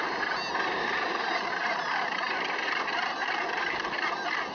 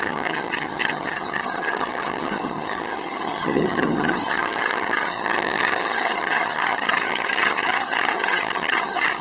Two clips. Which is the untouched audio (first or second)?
first